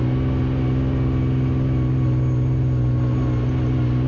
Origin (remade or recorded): recorded